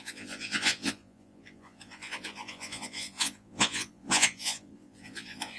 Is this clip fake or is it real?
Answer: fake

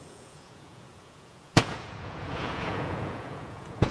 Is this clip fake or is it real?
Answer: fake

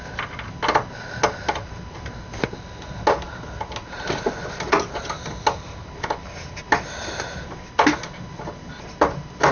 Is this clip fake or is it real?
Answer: real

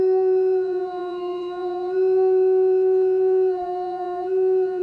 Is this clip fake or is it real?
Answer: fake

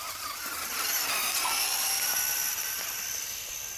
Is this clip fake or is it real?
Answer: real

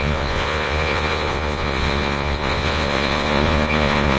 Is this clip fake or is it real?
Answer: fake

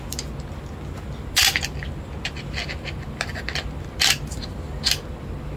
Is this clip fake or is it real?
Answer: real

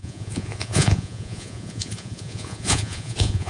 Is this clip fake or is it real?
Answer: fake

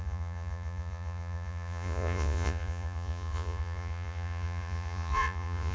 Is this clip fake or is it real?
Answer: fake